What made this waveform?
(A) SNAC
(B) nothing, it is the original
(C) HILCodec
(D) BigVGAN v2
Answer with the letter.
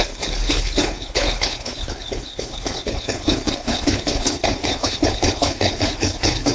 C